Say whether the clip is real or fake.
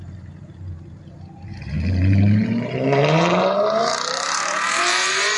fake